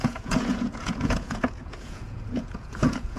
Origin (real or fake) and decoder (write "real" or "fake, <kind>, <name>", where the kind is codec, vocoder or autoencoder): fake, vocoder, Vocos